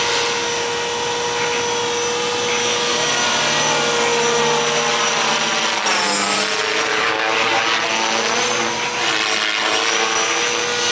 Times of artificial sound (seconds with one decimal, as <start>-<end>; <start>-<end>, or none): 2.6-3.1; 6.9-7.6